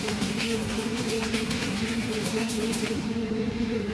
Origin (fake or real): fake